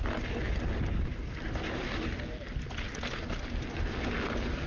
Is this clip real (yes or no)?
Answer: yes